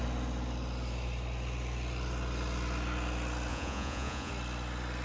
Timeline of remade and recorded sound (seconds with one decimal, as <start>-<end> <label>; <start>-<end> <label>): 0.0-3.5 recorded; 3.5-4.3 remade; 4.3-5.0 recorded